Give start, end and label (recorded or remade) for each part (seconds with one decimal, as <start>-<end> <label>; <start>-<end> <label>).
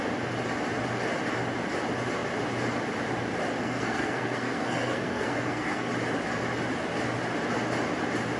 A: 0.0-3.6 recorded; 3.6-5.9 remade; 5.9-8.4 recorded